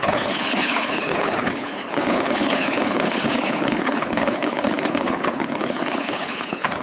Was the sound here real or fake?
fake